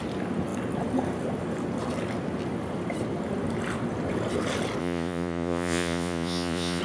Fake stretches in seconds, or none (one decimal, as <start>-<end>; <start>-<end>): 4.8-6.8